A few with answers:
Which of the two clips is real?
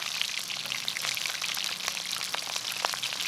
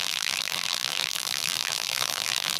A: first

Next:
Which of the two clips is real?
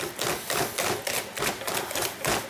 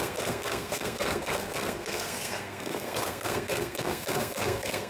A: first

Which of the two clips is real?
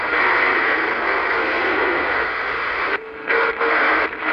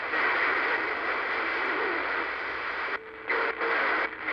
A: second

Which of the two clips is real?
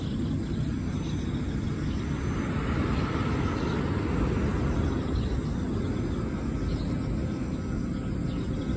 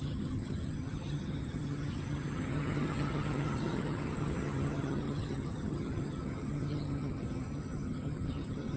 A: first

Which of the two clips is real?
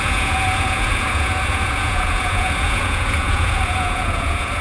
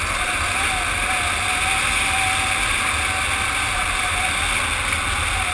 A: second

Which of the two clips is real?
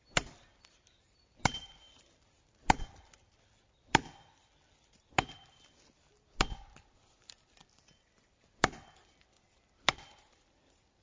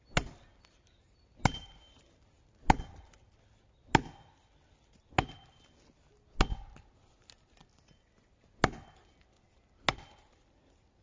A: second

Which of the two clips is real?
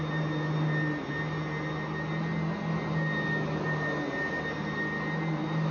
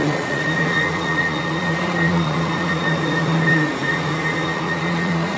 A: first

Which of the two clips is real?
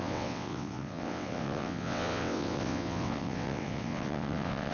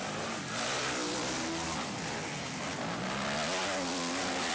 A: second